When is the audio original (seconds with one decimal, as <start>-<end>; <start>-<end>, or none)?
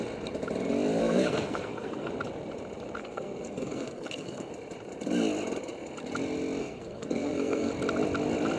0.0-1.0; 2.1-3.0; 4.5-6.6; 7.7-8.6